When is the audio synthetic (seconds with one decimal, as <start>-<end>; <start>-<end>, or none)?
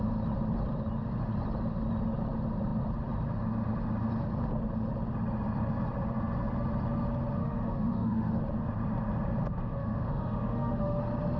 7.4-8.4; 9.4-11.0